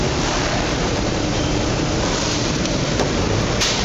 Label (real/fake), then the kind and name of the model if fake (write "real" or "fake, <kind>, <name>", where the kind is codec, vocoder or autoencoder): fake, vocoder, BigVGAN v2